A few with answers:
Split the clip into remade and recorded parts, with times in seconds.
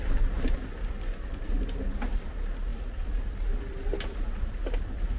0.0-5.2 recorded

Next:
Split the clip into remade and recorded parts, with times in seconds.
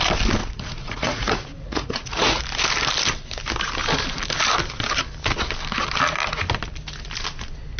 0.0-0.4 recorded; 0.4-2.4 remade; 2.4-7.8 recorded